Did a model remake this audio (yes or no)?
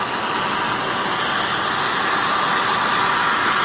no